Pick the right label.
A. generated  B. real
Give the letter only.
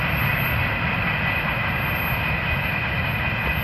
B